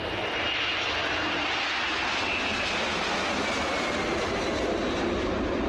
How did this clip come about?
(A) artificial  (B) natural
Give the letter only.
B